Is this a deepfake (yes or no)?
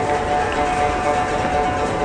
no